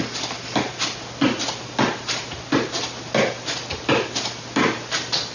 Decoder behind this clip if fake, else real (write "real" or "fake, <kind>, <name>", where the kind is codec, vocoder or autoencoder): real